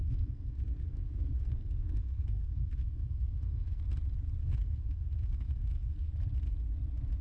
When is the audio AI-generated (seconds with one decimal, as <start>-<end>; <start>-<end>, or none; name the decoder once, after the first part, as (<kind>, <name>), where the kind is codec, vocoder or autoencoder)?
0.0-3.8 (codec, SNAC); 4.4-6.1